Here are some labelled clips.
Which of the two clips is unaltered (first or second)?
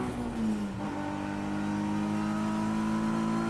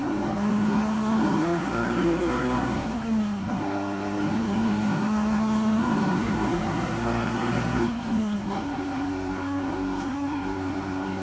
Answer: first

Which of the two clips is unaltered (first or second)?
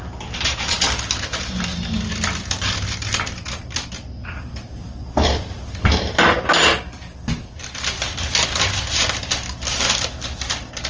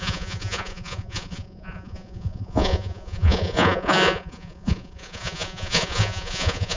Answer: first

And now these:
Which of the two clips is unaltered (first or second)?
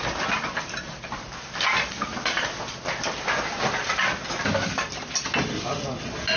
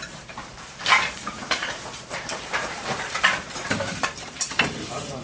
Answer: first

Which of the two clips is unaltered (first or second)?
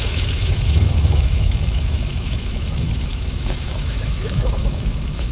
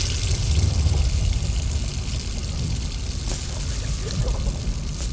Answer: second